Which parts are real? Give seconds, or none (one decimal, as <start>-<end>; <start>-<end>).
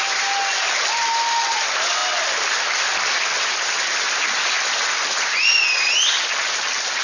0.0-7.0